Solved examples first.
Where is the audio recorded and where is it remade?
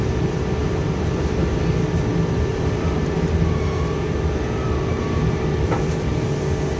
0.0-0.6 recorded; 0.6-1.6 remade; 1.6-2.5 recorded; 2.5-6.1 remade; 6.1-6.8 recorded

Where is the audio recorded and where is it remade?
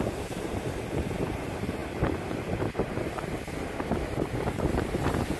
0.0-1.8 remade; 1.8-4.8 recorded; 4.8-5.4 remade